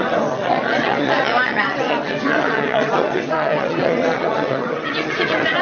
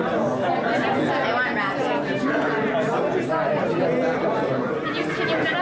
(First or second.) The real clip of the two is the second